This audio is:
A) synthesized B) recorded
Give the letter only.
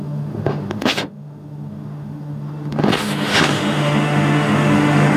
A